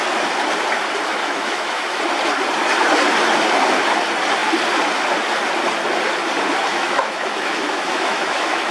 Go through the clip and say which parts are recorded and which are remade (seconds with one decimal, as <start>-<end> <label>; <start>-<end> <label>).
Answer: 0.0-1.2 recorded; 1.2-2.0 remade; 2.0-6.7 recorded; 6.7-8.7 remade